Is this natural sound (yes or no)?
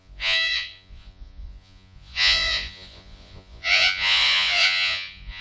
no